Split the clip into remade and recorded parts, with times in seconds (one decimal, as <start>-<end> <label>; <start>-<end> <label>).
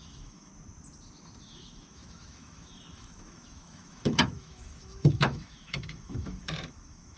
0.0-0.5 remade; 0.5-1.4 recorded; 1.4-7.2 remade